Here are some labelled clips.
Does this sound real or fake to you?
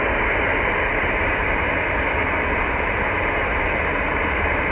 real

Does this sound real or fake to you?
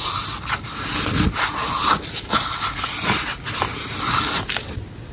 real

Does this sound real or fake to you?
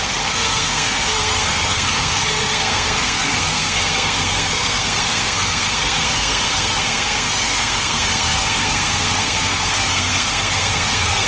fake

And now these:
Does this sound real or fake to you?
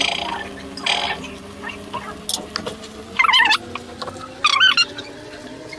real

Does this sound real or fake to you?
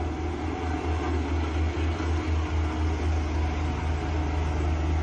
real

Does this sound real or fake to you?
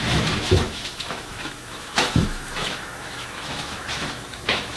fake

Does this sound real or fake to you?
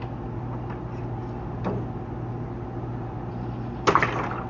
real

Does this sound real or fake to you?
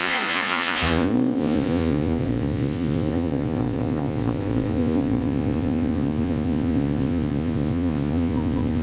fake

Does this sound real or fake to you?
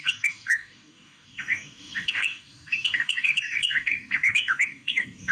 fake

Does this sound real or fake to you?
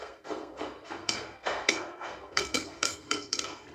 fake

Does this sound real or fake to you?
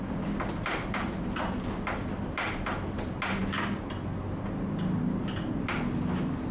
real